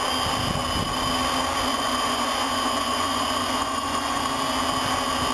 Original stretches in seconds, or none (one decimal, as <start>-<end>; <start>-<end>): 0.0-1.7; 4.2-5.3